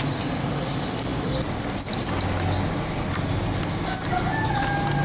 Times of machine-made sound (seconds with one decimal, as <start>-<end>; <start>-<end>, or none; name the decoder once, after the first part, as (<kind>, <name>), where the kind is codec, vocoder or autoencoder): none